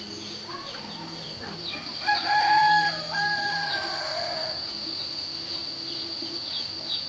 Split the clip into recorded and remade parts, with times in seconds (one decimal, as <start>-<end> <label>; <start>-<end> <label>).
0.0-7.1 recorded